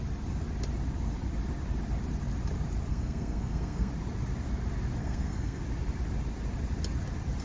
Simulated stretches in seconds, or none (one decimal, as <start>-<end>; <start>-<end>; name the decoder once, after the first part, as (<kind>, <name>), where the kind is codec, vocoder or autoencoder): 2.9-3.9 (codec, SNAC); 5.0-5.6